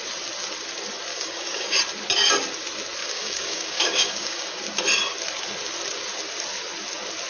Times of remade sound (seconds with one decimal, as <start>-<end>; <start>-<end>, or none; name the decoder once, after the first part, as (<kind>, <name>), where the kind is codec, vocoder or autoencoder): 1.1-1.8 (codec, DAC); 3.0-4.6